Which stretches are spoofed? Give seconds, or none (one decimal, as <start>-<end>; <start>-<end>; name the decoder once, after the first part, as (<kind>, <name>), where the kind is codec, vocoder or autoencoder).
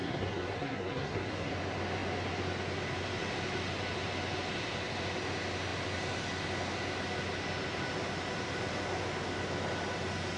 0.0-1.5 (codec, SNAC)